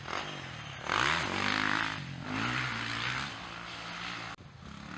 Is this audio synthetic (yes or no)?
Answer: no